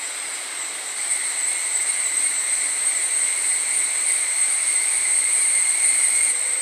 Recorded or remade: recorded